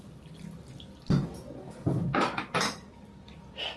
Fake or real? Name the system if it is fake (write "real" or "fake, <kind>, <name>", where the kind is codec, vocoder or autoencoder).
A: real